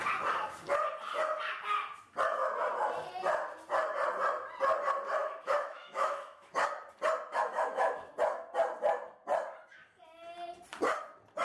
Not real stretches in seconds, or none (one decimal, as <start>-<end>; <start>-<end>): 5.2-6.6; 7.3-8.1